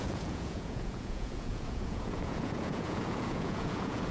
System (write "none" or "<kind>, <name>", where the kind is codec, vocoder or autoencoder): vocoder, Vocos